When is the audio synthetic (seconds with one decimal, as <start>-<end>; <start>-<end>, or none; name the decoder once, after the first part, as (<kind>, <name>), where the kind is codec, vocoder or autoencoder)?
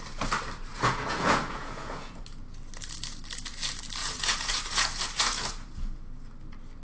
0.7-2.2 (vocoder, Vocos); 4.0-6.0